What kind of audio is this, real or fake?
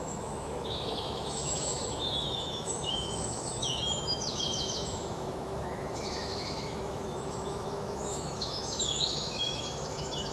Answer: fake